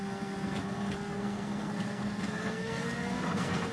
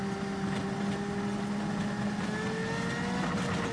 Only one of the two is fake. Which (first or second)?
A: first